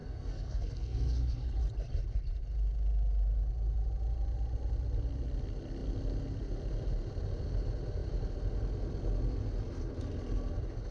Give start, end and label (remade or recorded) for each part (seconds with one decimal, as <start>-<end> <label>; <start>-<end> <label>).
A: 0.0-1.5 remade; 1.5-10.9 recorded